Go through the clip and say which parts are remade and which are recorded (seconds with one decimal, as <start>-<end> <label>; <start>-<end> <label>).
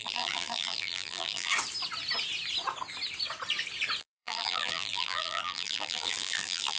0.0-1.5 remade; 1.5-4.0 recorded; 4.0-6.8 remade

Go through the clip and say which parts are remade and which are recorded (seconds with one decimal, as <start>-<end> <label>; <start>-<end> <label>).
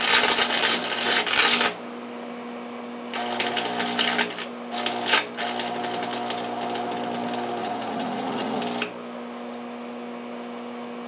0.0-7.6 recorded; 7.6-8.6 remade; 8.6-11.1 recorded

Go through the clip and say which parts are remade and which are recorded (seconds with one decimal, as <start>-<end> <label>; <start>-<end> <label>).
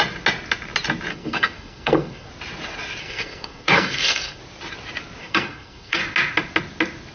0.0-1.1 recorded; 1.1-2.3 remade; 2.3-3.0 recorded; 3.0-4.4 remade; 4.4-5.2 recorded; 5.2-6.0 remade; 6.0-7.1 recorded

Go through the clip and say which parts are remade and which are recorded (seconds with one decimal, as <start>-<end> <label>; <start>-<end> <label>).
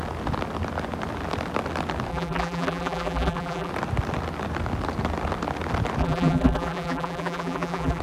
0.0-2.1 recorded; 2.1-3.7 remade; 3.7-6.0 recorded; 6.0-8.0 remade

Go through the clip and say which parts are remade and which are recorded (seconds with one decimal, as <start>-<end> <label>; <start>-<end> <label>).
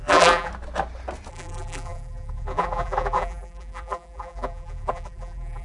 0.0-0.5 remade; 0.5-1.3 recorded; 1.3-5.6 remade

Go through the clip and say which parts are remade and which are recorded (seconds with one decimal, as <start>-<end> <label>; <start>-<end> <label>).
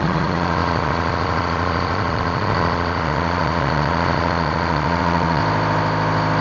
0.0-5.4 remade; 5.4-6.4 recorded